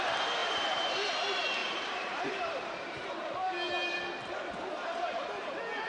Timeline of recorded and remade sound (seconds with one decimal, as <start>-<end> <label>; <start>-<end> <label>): 0.0-0.4 recorded; 0.4-1.1 remade; 1.1-1.6 recorded; 1.6-3.3 remade; 3.3-5.9 recorded